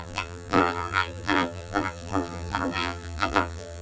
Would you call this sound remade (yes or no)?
yes